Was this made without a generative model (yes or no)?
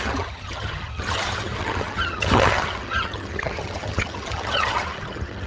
no